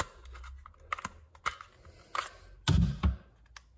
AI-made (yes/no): no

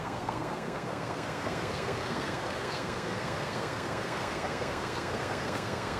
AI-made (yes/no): yes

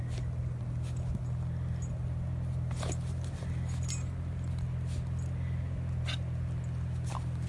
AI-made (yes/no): no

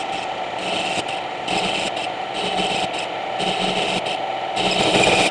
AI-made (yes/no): no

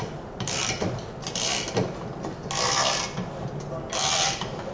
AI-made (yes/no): no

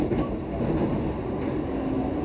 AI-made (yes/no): no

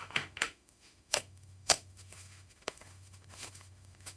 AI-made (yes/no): yes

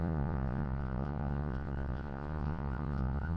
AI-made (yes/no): yes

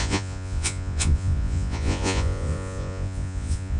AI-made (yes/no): yes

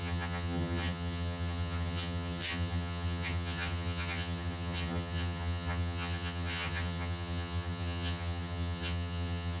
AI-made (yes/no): yes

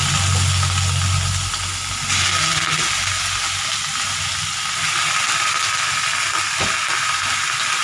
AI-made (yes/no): no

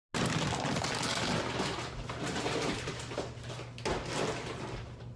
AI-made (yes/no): no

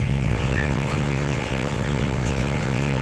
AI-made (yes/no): yes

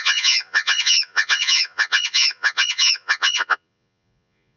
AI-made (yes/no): yes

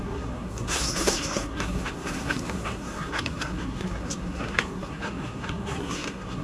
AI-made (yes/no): yes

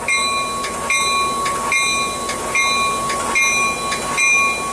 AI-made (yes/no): no